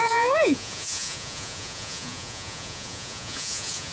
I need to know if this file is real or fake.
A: fake